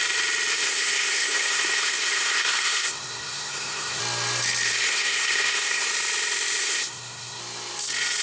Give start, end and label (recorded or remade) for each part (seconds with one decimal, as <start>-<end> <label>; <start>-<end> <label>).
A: 0.0-0.5 recorded; 0.5-4.0 remade; 4.0-4.9 recorded; 4.9-5.9 remade; 5.9-6.6 recorded; 6.6-7.4 remade; 7.4-8.2 recorded